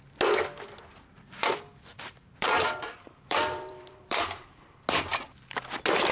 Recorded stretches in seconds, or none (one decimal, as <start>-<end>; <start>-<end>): 0.0-1.9; 4.4-6.1